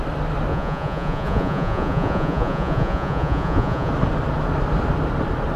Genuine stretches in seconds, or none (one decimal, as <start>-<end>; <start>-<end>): 0.0-0.5; 3.9-5.6